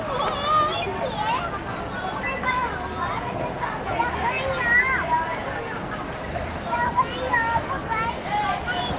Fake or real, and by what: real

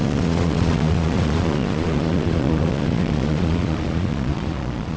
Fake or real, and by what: fake, vocoder, Vocos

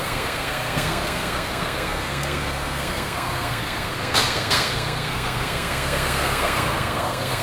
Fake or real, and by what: fake, codec, SNAC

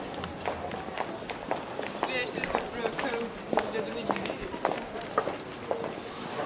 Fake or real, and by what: real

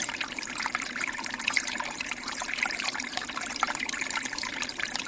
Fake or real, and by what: fake, vocoder, BigVGAN v2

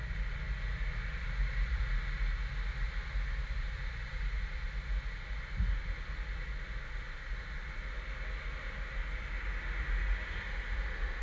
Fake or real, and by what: real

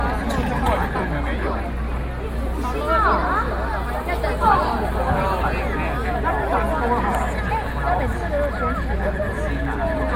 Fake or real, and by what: real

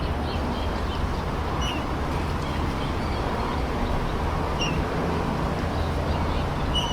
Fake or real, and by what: real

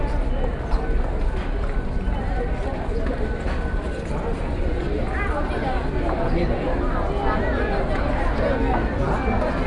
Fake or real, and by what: real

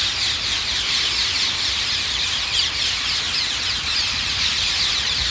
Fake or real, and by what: fake, vocoder, BigVGAN v2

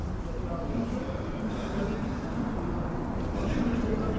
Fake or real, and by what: real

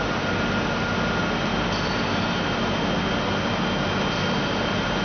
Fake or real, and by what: real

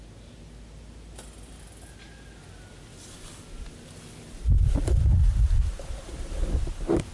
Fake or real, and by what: real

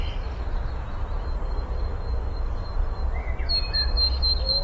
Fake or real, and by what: real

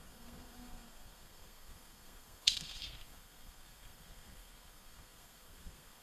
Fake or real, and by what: fake, codec, SNAC